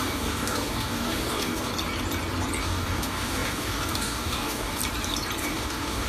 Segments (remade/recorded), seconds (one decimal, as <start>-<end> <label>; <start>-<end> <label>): 0.0-1.7 remade; 1.7-2.6 recorded; 2.6-4.8 remade; 4.8-5.4 recorded; 5.4-6.1 remade